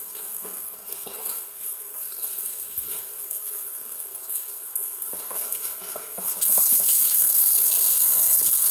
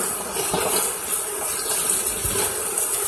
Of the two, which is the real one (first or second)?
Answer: second